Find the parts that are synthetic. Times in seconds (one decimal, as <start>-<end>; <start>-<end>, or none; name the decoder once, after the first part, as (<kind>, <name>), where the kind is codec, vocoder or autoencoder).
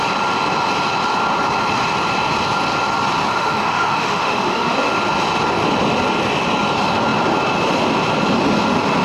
3.3-4.9 (autoencoder, DAC-VAE)